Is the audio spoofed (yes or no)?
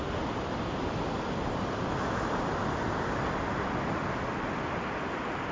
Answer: no